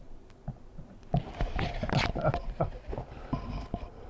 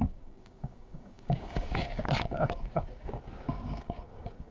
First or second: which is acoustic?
first